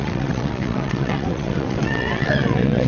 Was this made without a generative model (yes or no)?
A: no